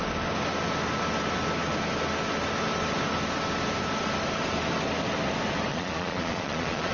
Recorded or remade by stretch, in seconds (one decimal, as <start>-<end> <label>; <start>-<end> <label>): 0.0-5.7 recorded; 5.7-6.9 remade

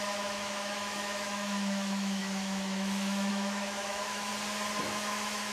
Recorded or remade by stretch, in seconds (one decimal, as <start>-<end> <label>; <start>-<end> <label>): 0.0-4.3 remade; 4.3-4.8 recorded; 4.8-5.5 remade

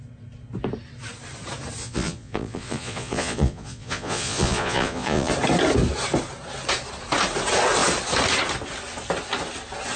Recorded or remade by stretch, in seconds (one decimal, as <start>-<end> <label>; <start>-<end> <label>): 0.0-1.8 recorded; 1.8-5.3 remade; 5.3-10.0 recorded

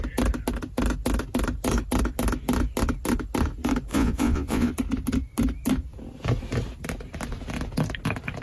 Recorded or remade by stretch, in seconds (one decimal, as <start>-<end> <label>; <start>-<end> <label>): 0.0-3.9 recorded; 3.9-4.7 remade; 4.7-8.4 recorded

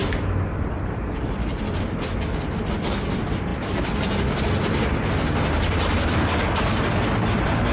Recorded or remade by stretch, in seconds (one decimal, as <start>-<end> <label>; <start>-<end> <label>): 0.0-3.5 recorded; 3.5-4.4 remade; 4.4-7.7 recorded